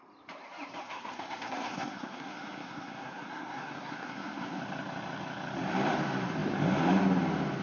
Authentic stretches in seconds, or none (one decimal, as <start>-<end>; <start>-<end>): 0.0-0.8; 4.6-7.6